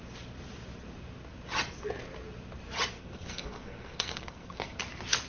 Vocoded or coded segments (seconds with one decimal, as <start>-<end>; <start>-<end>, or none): 2.9-4.8